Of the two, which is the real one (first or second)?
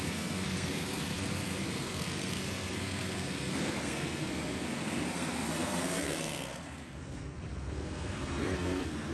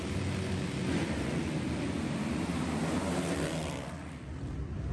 second